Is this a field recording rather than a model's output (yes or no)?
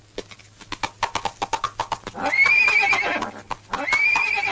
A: yes